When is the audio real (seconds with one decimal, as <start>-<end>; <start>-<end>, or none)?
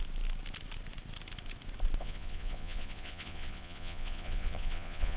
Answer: 0.0-2.0